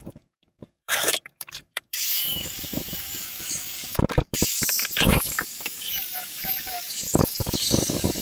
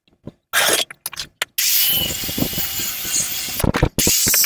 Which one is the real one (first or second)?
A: second